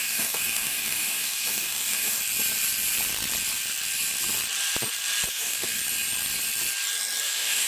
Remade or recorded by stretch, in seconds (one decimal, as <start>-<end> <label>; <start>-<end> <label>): 0.0-2.2 remade; 2.2-5.3 recorded; 5.3-5.8 remade; 5.8-7.2 recorded; 7.2-7.7 remade